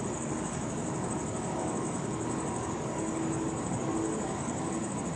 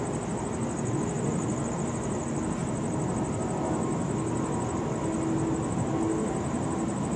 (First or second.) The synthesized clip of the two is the first